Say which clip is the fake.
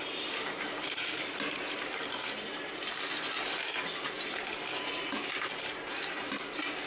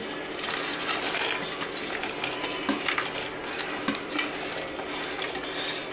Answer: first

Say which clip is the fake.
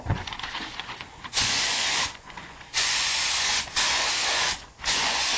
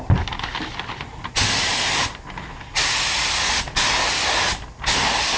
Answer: first